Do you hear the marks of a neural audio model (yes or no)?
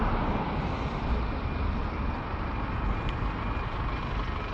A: no